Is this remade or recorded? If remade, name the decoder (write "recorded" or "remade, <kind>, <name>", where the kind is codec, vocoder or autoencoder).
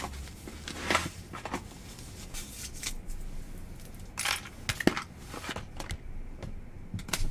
recorded